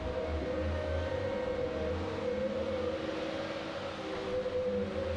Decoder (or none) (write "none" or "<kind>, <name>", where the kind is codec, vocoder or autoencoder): none